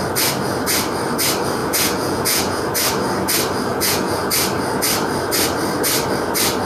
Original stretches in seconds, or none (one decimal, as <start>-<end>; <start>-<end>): 0.0-1.6; 2.6-3.7; 4.3-6.7